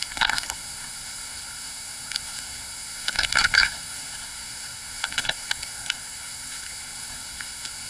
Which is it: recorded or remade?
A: remade